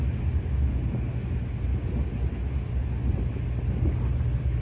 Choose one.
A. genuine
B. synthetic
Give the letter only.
A